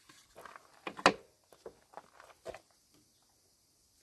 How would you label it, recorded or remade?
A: recorded